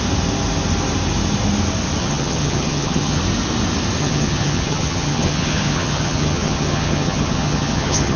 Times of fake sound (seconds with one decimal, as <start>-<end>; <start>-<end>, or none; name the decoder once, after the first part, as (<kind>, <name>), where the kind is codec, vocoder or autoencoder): 2.0-3.2 (vocoder, HiFi-GAN); 4.0-8.2